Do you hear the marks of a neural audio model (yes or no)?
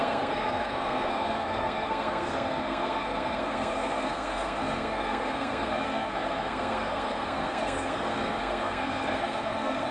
yes